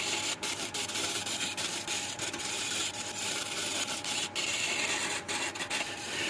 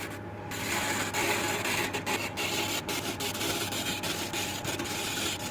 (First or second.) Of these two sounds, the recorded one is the second